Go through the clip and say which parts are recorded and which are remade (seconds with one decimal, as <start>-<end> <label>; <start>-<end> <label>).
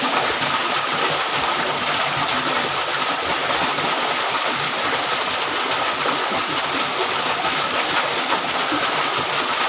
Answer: 0.0-9.7 recorded